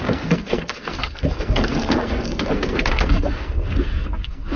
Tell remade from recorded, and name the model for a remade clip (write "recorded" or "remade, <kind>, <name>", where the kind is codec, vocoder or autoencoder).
remade, codec, SNAC